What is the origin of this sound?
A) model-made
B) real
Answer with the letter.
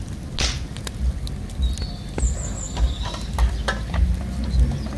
B